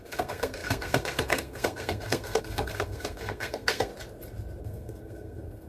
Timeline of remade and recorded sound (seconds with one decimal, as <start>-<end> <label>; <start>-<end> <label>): 0.0-3.9 remade; 3.9-4.6 recorded; 4.6-5.7 remade